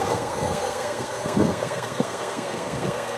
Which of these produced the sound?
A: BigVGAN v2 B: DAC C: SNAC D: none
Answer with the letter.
C